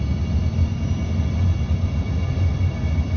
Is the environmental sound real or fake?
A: real